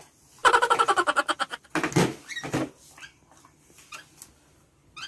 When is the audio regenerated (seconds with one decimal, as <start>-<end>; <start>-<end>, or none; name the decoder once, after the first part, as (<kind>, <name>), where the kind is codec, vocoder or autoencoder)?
none